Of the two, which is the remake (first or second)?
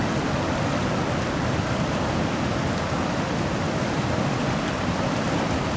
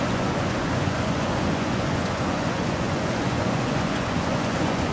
second